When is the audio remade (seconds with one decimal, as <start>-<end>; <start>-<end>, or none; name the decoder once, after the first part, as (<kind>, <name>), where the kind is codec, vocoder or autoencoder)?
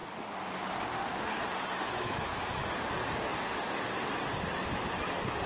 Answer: 1.8-2.3 (autoencoder, DAC-VAE)